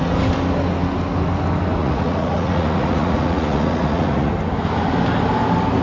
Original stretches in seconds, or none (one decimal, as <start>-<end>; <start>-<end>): 0.0-1.8; 4.3-5.8